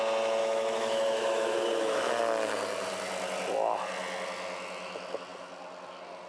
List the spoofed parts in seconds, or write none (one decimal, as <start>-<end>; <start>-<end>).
0.4-2.1